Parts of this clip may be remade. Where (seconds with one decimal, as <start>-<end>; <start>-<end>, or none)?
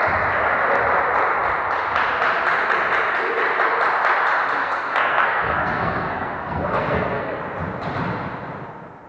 4.6-7.4